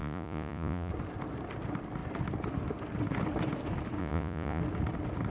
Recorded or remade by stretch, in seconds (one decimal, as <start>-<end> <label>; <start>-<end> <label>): 0.0-0.9 remade; 0.9-4.0 recorded; 4.0-4.6 remade; 4.6-5.3 recorded